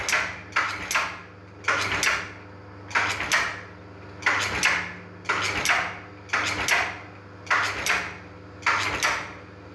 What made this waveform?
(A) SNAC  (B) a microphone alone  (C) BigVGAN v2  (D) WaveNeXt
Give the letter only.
B